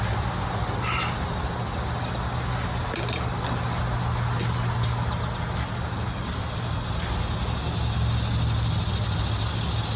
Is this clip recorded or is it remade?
recorded